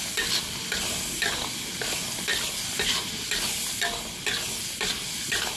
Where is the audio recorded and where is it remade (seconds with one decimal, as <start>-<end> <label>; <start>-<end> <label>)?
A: 0.0-5.6 recorded